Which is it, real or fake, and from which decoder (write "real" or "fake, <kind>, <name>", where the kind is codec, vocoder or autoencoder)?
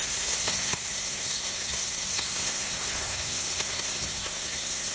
fake, codec, SNAC